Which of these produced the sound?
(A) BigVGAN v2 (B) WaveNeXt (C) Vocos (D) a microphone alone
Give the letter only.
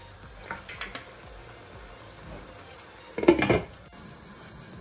D